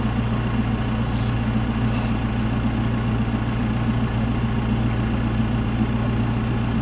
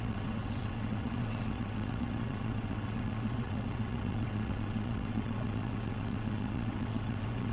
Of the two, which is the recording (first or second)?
first